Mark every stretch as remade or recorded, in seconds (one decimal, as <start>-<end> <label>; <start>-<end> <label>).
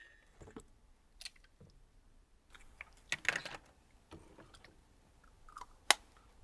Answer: 0.0-6.4 recorded